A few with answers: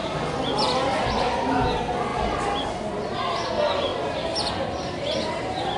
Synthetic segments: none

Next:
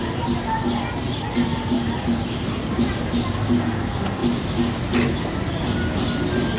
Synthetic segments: 1.5-3.7